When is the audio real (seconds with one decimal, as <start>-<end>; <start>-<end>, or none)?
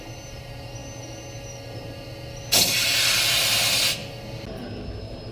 0.0-5.3